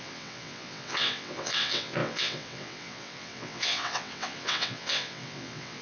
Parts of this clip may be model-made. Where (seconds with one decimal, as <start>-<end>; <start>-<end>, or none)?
0.0-5.8